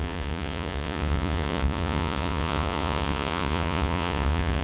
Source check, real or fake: fake